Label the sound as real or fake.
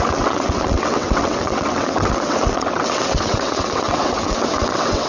fake